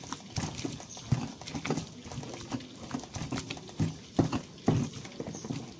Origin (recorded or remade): recorded